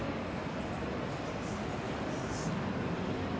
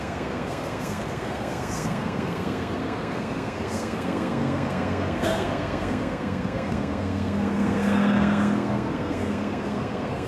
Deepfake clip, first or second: second